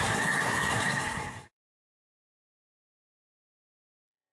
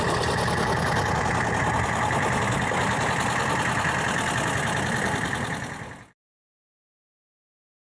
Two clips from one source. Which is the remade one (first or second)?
first